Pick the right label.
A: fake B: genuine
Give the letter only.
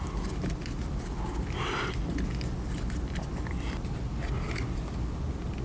B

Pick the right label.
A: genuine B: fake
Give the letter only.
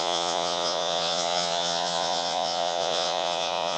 B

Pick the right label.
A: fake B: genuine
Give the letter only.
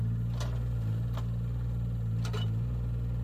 B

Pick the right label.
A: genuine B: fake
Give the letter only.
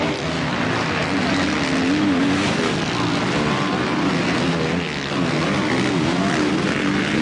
A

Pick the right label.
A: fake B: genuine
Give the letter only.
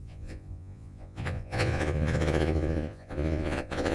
A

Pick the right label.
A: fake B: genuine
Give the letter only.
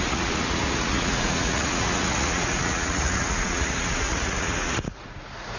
A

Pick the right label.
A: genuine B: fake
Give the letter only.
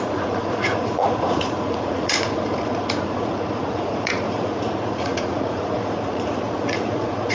B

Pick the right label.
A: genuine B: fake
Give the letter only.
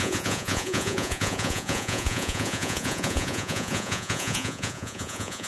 B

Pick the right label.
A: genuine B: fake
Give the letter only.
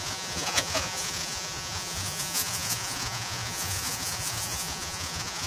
B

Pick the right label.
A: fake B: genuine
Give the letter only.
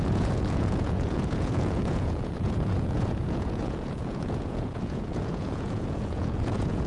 A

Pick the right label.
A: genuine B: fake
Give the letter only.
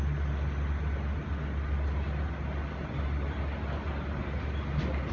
A